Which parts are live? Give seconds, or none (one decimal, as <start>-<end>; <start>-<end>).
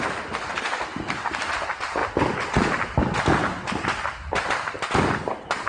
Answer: 0.0-5.7